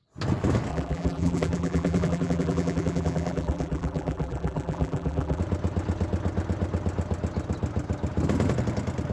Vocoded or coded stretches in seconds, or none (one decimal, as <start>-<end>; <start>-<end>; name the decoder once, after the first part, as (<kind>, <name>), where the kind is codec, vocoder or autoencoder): 0.7-5.4 (vocoder, BigVGAN v2)